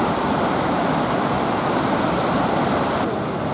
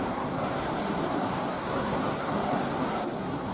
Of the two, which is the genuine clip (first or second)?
first